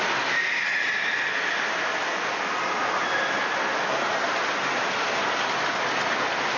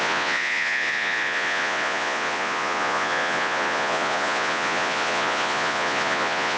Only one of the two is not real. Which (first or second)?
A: second